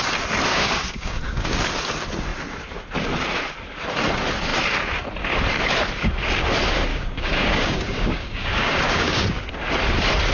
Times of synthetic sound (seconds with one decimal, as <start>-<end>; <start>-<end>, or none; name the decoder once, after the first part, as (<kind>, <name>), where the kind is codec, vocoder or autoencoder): 0.5-1.6 (codec, DAC); 6.9-9.5